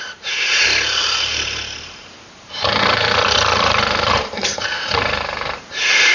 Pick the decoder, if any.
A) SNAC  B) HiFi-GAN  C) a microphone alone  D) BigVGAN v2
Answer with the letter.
D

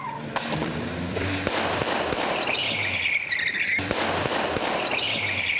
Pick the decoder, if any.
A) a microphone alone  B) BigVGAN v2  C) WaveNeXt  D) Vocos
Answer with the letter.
B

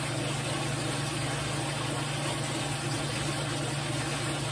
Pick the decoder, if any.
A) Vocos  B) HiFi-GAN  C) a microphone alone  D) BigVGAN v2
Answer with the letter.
C